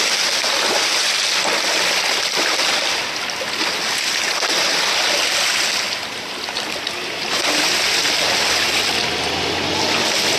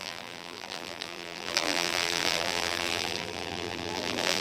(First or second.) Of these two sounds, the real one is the first